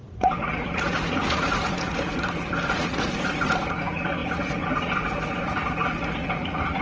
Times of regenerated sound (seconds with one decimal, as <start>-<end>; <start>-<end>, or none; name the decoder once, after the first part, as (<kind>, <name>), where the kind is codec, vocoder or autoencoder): 0.0-6.8 (vocoder, Vocos)